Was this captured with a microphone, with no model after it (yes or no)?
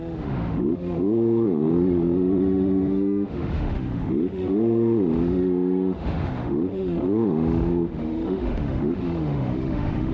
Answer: no